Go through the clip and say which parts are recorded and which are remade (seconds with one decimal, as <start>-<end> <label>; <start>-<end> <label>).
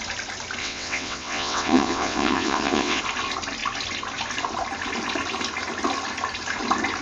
0.0-0.6 recorded; 0.6-3.0 remade; 3.0-7.0 recorded